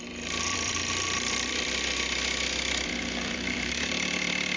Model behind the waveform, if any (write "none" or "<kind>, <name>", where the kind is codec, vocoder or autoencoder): vocoder, BigVGAN v2